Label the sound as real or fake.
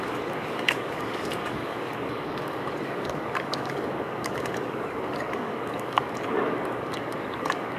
fake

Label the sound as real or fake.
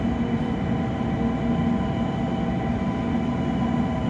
real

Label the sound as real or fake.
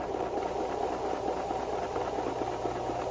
real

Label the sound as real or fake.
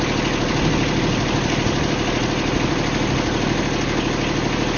real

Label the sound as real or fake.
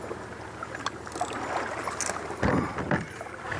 real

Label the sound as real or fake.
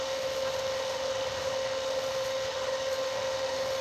fake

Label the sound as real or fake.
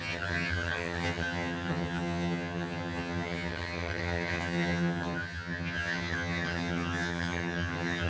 fake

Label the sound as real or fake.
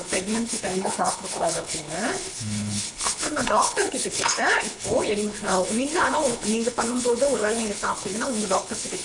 fake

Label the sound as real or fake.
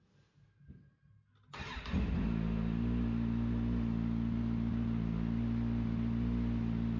real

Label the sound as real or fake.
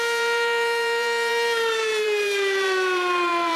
fake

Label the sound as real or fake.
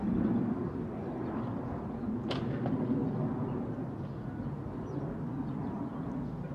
real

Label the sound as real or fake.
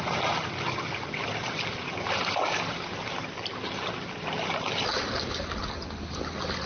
real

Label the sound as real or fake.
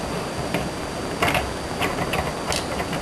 real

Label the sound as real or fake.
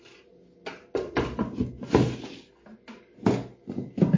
real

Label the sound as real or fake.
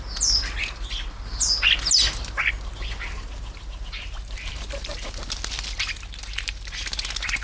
real